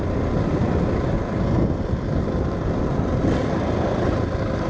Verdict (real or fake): real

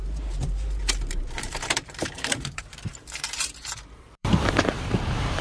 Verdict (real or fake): fake